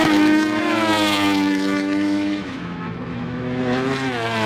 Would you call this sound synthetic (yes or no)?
yes